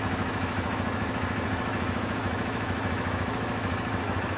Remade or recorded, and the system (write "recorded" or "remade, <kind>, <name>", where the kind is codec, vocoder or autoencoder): remade, autoencoder, DAC-VAE